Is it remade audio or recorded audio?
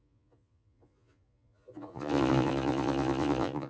remade